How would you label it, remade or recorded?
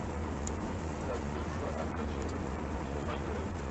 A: remade